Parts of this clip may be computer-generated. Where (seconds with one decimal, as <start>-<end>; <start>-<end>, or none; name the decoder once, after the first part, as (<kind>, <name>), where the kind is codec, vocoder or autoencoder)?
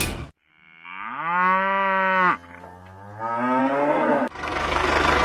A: 0.0-0.5 (codec, SNAC); 3.6-5.2